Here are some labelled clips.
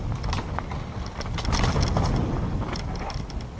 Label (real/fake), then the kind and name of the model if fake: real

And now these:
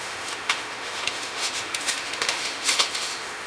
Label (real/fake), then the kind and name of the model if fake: fake, autoencoder, DAC-VAE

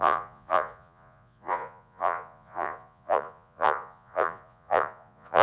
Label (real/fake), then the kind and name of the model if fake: fake, vocoder, Vocos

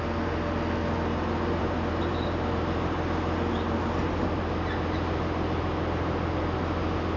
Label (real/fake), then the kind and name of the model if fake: real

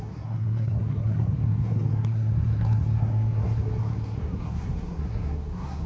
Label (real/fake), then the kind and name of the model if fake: fake, codec, SNAC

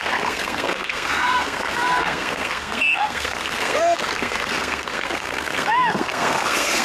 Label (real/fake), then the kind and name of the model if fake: fake, codec, SNAC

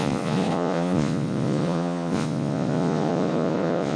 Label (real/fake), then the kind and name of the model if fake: fake, vocoder, Vocos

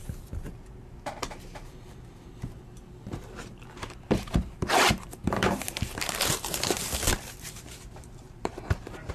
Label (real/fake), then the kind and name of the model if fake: fake, vocoder, BigVGAN v2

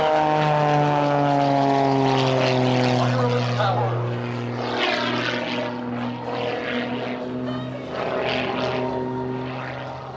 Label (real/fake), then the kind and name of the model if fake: real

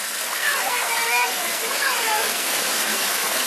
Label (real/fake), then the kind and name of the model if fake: fake, codec, SNAC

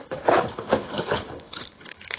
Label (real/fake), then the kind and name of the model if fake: fake, codec, HILCodec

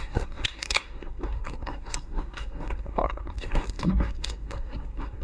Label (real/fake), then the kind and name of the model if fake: fake, codec, SNAC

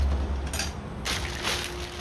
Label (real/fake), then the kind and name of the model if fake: real